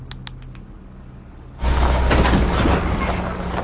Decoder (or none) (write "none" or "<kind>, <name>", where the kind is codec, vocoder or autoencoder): none